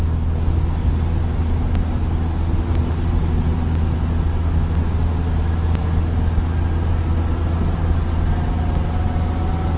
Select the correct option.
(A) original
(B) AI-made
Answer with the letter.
A